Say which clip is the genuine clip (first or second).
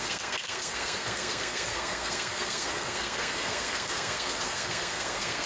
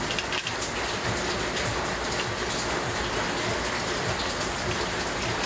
second